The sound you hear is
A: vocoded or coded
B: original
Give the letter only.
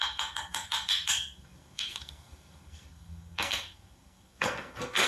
A